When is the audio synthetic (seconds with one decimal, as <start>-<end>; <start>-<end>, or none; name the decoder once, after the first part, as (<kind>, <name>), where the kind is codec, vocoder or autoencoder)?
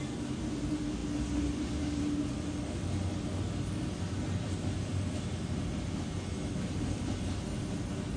none